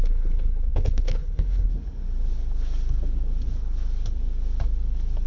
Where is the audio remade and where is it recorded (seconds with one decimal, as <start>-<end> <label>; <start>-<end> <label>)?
0.0-1.7 remade; 1.7-5.3 recorded